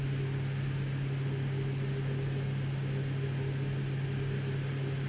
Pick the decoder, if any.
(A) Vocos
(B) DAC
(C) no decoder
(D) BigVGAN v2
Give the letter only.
C